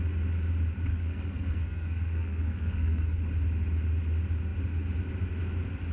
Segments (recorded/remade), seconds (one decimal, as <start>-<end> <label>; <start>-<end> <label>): 0.0-0.9 recorded; 0.9-3.2 remade; 3.2-5.9 recorded